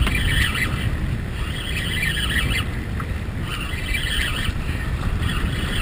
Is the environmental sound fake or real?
real